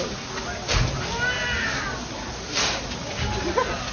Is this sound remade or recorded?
recorded